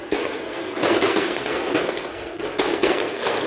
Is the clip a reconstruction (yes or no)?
yes